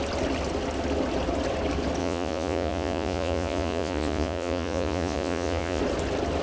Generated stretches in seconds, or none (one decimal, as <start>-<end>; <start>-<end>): 2.0-5.8